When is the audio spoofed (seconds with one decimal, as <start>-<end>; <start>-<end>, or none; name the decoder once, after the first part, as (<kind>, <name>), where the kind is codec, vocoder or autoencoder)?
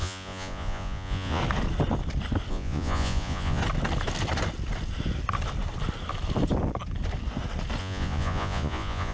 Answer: 0.0-1.4 (vocoder, Vocos); 2.5-3.6; 7.8-9.1